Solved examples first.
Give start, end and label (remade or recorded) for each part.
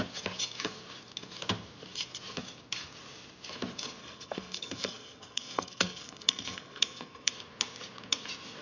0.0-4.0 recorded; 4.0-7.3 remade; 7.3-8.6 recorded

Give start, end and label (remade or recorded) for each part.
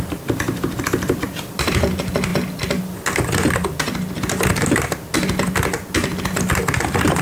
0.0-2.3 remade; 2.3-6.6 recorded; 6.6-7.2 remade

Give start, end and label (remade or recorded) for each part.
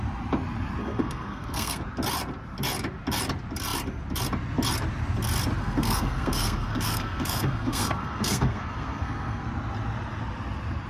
0.0-0.8 recorded; 0.8-1.8 remade; 1.8-5.6 recorded; 5.6-9.5 remade; 9.5-10.9 recorded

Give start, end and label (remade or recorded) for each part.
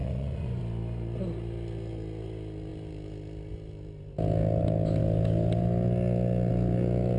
0.0-0.6 remade; 0.6-7.2 recorded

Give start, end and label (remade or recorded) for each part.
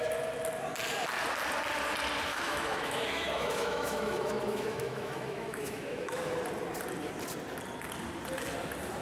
0.0-2.3 recorded; 2.3-6.4 remade; 6.4-9.0 recorded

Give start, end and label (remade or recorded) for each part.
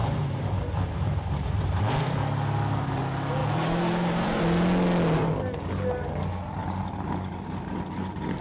0.0-1.8 remade; 1.8-3.4 recorded; 3.4-4.4 remade; 4.4-6.6 recorded; 6.6-8.4 remade